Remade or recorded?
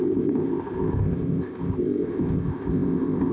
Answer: remade